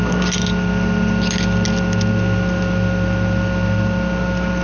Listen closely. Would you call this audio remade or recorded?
recorded